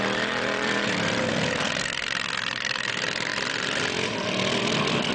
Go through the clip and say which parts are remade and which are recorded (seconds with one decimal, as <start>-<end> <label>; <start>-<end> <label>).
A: 0.0-5.1 remade